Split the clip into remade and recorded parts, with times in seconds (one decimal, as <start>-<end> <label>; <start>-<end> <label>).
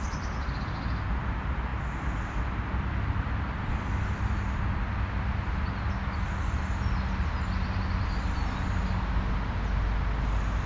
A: 0.0-10.7 recorded